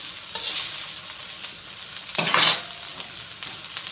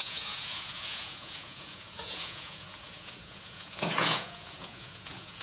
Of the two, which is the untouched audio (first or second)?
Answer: first